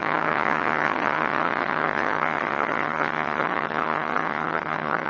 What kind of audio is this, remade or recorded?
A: remade